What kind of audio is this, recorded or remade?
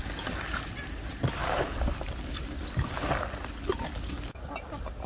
recorded